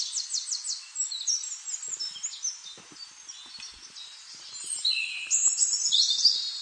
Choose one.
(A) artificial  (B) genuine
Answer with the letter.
B